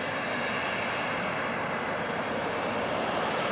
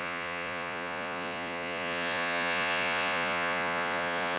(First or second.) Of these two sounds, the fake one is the second